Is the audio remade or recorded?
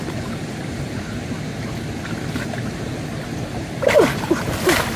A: recorded